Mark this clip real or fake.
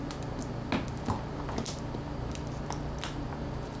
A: real